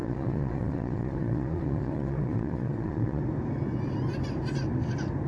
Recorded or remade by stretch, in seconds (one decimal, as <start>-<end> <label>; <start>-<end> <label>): 0.0-3.2 remade; 3.2-5.3 recorded